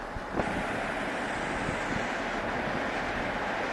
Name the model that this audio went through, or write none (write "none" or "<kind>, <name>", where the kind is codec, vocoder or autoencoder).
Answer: none